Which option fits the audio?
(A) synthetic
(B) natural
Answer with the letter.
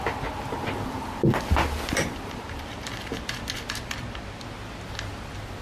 B